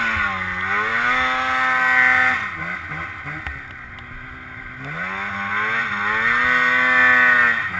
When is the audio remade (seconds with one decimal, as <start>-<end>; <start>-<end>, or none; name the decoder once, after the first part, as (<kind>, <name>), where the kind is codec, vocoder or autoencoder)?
none